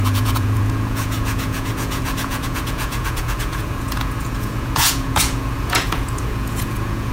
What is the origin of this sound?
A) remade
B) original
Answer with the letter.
A